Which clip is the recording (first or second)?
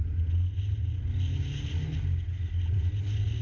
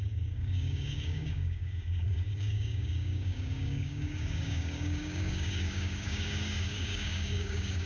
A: first